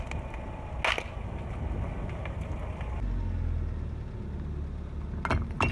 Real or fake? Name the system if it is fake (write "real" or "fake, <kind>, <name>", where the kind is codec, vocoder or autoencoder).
real